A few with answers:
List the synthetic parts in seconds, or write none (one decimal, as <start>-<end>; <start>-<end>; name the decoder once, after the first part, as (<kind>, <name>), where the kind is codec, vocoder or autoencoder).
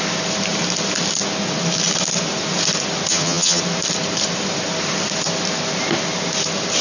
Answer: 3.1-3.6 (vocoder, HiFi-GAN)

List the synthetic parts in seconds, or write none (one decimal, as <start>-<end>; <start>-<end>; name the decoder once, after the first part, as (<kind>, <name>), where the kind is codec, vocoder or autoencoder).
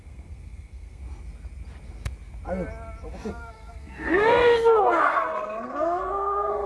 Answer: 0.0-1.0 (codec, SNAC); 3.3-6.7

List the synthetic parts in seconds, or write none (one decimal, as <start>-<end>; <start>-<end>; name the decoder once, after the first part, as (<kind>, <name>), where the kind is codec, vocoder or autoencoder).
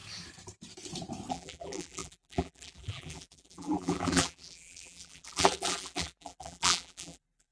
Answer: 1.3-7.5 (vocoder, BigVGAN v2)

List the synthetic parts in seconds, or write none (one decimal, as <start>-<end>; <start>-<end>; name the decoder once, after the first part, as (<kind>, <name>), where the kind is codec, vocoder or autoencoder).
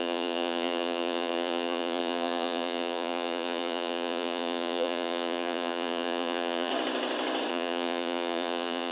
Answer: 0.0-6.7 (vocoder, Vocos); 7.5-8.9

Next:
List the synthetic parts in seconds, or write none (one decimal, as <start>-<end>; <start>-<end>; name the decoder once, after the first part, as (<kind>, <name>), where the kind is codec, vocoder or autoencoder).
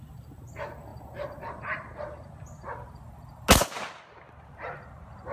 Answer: none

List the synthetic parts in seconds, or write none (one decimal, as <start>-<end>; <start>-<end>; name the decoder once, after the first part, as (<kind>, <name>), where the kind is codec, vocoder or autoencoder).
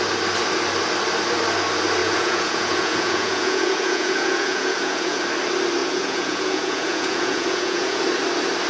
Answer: 2.0-5.2 (vocoder, Vocos); 5.8-8.0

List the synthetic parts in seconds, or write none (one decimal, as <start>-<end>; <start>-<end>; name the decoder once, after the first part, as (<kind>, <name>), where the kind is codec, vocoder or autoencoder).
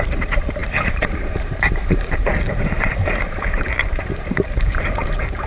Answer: 0.0-5.5 (vocoder, BigVGAN v2)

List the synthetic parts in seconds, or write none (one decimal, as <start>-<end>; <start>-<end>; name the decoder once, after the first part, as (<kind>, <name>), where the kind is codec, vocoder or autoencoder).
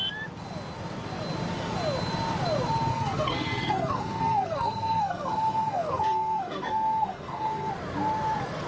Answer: 2.9-7.7 (codec, SNAC)